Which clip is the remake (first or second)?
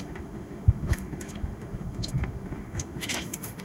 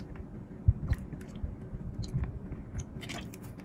first